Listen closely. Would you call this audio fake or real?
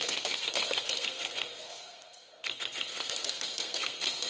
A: fake